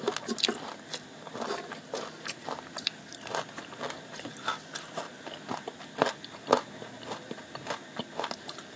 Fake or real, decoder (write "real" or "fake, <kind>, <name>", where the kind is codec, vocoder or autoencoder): real